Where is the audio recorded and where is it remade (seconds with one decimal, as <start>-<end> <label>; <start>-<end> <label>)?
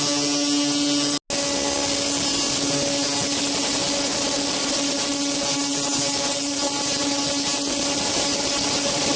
0.0-9.2 recorded